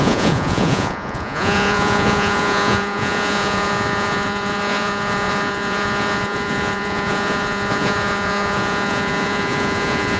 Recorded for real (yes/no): no